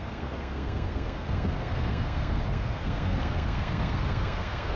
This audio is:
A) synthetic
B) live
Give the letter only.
A